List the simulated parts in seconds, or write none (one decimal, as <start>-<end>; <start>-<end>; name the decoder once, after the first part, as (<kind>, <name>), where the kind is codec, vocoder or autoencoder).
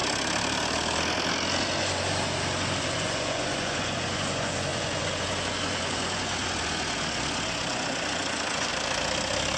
1.6-8.7 (vocoder, Vocos)